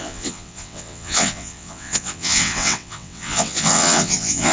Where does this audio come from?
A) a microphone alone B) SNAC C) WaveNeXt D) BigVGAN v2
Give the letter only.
C